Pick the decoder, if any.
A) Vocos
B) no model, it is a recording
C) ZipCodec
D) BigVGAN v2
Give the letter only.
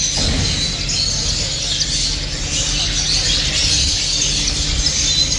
B